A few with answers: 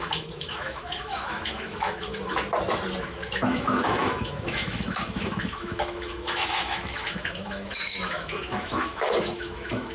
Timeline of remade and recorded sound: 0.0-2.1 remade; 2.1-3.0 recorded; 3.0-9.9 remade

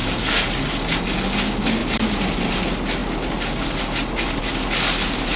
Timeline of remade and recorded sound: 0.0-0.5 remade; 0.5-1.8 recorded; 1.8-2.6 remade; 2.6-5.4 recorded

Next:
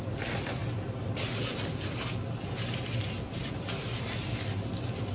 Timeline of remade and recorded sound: 0.0-5.1 recorded

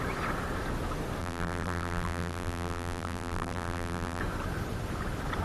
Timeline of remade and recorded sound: 0.0-1.2 recorded; 1.2-4.2 remade; 4.2-5.4 recorded